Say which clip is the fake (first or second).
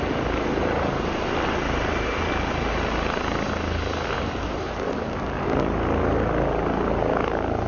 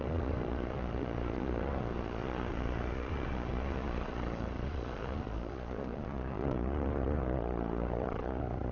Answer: second